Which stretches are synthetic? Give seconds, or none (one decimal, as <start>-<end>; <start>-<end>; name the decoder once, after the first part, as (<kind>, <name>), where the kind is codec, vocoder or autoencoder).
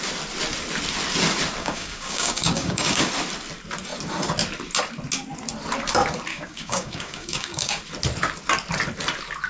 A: 1.6-3.1 (codec, DAC); 6.3-7.8